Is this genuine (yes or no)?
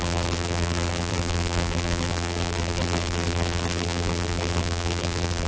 no